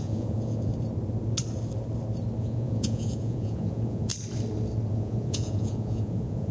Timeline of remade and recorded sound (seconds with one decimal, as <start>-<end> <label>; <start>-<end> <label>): 0.0-0.7 remade; 0.7-2.4 recorded; 2.4-4.1 remade; 4.1-4.9 recorded; 4.9-6.5 remade